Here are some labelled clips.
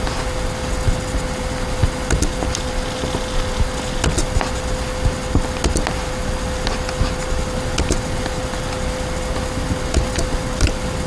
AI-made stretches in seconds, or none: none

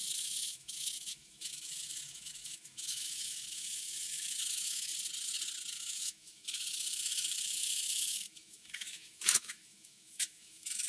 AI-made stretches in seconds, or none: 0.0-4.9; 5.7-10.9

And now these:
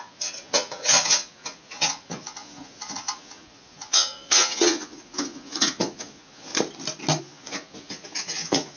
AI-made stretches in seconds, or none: 0.0-6.5; 7.2-8.8